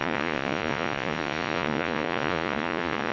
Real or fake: fake